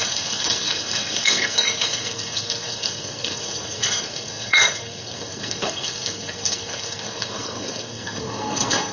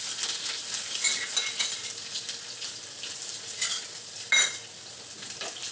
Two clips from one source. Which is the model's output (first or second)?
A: first